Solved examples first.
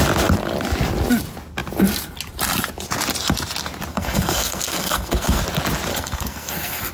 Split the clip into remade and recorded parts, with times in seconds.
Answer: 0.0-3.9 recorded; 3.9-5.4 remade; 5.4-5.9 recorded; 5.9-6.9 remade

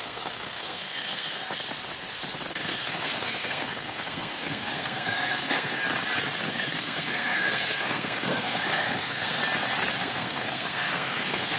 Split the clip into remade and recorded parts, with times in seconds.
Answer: 0.0-1.4 remade; 1.4-2.5 recorded; 2.5-5.8 remade; 5.8-6.5 recorded; 6.5-9.4 remade; 9.4-10.0 recorded; 10.0-11.6 remade

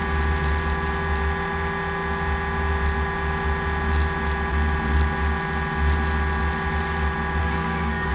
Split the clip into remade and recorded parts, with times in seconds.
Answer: 0.0-7.4 recorded; 7.4-8.1 remade

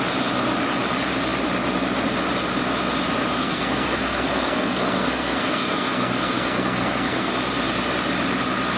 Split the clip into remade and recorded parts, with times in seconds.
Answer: 0.0-3.4 recorded; 3.4-7.3 remade; 7.3-8.8 recorded

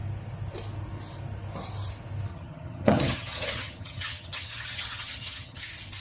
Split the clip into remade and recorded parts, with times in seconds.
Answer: 0.0-2.3 recorded; 2.3-5.6 remade; 5.6-6.0 recorded

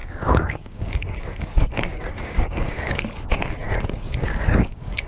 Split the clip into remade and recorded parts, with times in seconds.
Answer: 0.0-5.1 remade

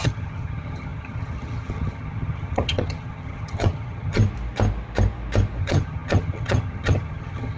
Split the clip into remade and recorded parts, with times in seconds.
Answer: 0.0-4.2 remade; 4.2-5.6 recorded; 5.6-7.6 remade

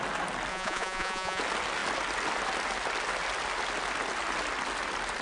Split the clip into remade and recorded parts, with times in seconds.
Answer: 0.0-0.5 recorded; 0.5-1.4 remade; 1.4-5.2 recorded